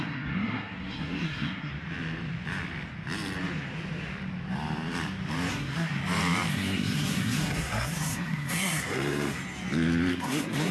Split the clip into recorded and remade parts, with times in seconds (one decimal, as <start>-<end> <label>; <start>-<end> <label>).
0.0-1.7 remade; 1.7-5.5 recorded; 5.5-6.0 remade; 6.0-6.5 recorded; 6.5-9.4 remade; 9.4-10.1 recorded; 10.1-10.7 remade